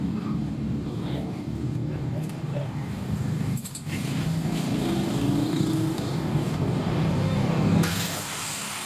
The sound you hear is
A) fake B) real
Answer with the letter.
A